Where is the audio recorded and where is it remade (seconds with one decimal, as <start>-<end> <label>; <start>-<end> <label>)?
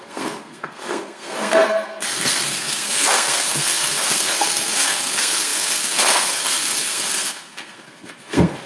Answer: 0.0-8.7 remade